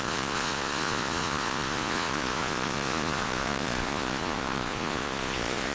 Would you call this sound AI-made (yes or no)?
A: yes